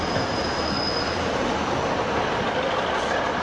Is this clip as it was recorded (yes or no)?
yes